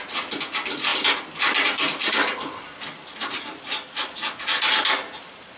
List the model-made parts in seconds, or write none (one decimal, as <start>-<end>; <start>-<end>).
none